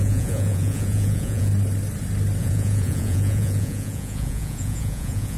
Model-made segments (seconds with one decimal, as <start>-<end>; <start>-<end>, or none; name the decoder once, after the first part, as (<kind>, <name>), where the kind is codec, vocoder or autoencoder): 0.0-1.5 (vocoder, Vocos); 2.4-5.4